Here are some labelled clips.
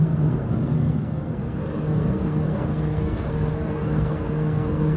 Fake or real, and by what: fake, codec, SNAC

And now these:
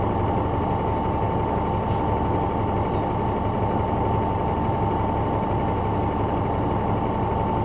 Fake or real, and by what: real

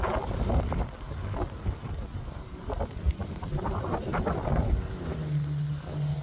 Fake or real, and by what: real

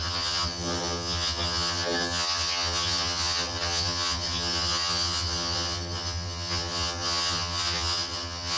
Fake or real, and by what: fake, vocoder, HiFi-GAN